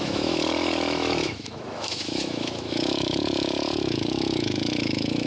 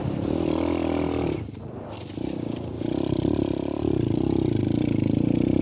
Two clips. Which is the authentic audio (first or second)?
second